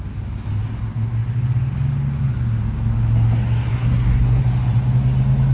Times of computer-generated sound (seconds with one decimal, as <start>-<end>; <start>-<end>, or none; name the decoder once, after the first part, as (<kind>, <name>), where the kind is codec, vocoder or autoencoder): 3.7-4.4 (codec, SNAC)